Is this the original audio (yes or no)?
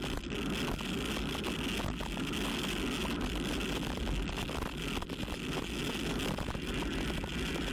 yes